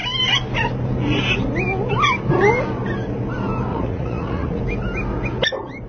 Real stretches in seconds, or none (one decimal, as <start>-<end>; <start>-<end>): 0.0-3.7; 4.6-5.9